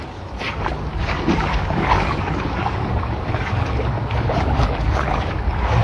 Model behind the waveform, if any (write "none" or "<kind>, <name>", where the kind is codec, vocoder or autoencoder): codec, DAC